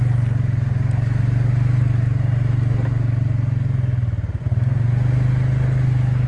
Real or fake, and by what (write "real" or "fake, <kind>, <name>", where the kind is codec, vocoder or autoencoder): real